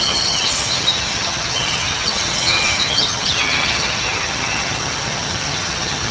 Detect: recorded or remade remade